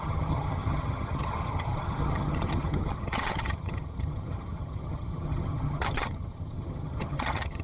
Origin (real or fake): fake